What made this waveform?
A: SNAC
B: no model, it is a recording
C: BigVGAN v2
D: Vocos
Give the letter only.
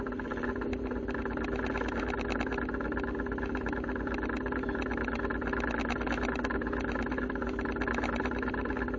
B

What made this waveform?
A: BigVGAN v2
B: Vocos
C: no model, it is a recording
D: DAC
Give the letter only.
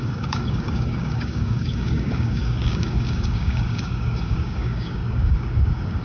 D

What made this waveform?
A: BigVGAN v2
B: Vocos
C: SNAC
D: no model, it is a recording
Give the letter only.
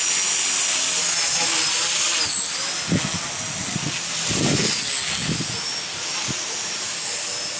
D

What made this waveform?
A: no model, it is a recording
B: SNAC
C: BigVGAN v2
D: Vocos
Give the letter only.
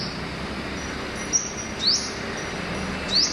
A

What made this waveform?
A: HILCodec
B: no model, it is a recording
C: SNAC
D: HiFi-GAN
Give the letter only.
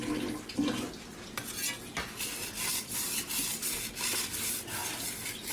B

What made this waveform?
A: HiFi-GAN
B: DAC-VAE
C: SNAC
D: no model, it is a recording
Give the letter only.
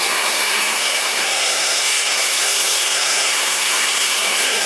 C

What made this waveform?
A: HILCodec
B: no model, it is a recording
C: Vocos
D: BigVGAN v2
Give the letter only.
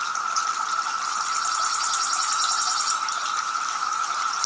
B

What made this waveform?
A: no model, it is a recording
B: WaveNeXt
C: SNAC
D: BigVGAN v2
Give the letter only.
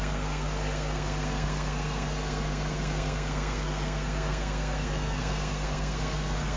C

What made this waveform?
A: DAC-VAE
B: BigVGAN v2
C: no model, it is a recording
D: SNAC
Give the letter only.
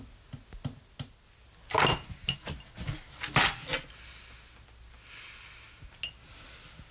C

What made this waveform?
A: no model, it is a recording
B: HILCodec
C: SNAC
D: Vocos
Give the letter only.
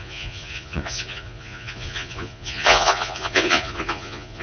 D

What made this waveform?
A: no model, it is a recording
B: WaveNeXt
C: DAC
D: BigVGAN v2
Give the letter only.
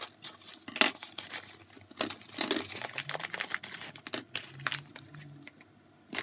A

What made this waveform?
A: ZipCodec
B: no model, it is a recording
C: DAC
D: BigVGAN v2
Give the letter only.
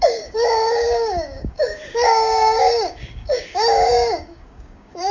C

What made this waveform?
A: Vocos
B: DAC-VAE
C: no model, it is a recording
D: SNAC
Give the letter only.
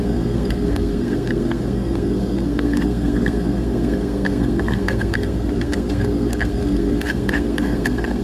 D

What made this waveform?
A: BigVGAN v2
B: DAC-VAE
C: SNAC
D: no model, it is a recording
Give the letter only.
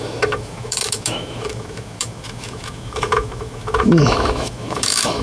B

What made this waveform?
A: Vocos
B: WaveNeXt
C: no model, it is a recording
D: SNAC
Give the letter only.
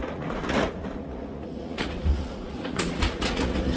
A